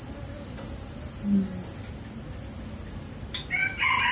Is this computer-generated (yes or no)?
no